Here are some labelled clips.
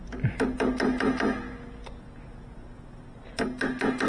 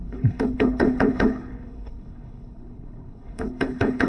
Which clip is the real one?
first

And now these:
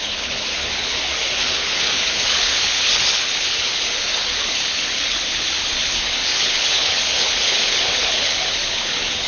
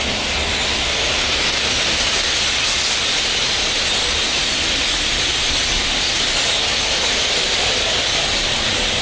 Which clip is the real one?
second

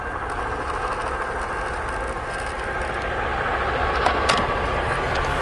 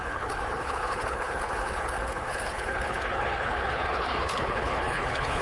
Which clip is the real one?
first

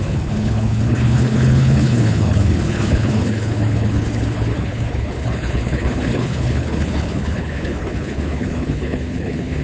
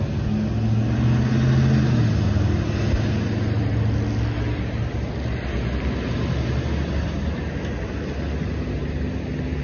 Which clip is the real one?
second